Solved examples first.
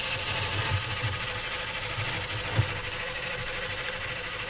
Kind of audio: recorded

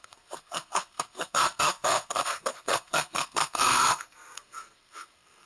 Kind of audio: remade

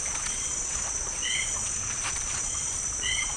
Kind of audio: remade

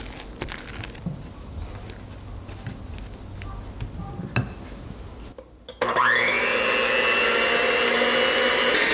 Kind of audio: recorded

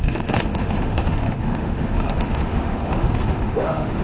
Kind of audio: remade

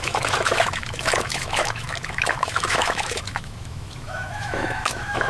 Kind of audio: remade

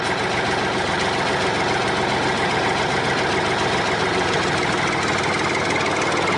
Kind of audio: recorded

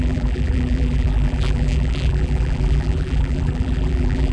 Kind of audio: remade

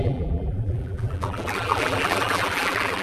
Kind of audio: remade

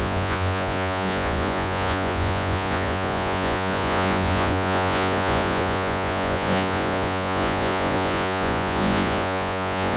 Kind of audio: remade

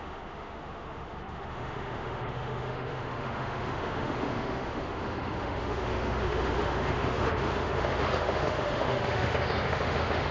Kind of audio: remade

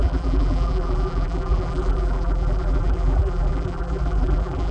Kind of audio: remade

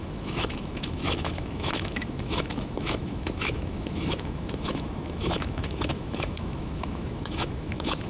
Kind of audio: remade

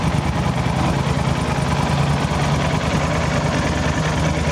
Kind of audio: recorded